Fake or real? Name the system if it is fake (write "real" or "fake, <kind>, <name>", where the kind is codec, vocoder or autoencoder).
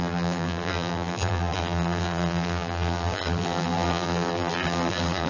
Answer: fake, vocoder, BigVGAN v2